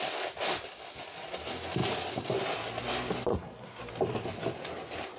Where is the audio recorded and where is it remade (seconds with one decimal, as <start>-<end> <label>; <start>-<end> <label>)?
0.0-3.3 recorded; 3.3-3.8 remade; 3.8-5.2 recorded